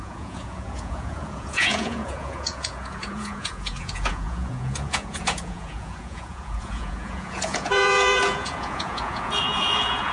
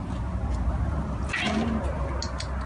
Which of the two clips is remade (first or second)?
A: first